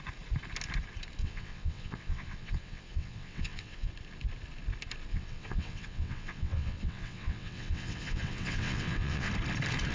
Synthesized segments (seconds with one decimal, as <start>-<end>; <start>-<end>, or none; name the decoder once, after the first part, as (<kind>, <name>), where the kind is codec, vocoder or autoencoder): 1.2-3.9 (vocoder, WaveNeXt); 5.1-9.3